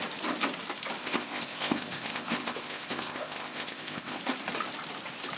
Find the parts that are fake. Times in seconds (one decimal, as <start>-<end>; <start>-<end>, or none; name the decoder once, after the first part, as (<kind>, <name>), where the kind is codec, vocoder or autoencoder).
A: 1.0-4.2 (codec, ZipCodec)